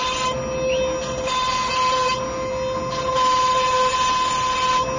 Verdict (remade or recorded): recorded